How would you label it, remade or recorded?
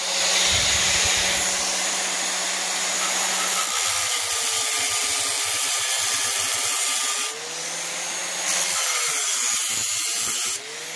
recorded